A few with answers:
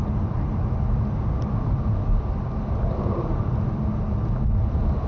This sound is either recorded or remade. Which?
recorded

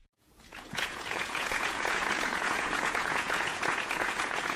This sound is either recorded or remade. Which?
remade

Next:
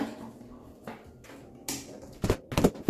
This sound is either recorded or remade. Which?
recorded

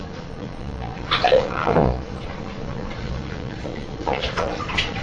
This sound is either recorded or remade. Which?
remade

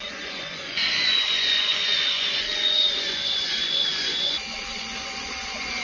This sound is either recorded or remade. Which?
remade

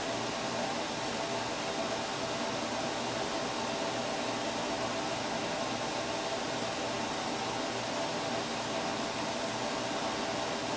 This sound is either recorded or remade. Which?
recorded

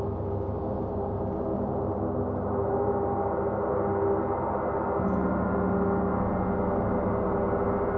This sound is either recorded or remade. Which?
recorded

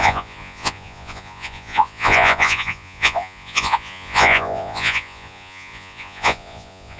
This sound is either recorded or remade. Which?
remade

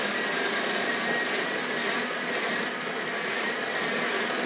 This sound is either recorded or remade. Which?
recorded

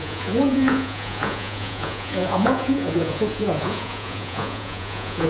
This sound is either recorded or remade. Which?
remade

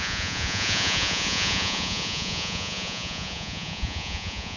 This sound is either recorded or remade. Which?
remade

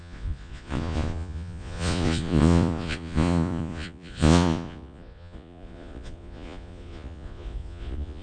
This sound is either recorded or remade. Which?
remade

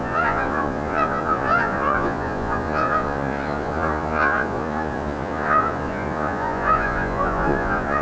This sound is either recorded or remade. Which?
remade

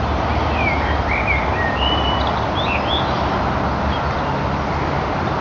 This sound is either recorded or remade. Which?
recorded